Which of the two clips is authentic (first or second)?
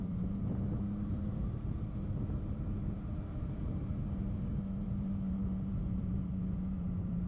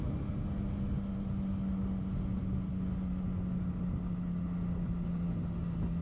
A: second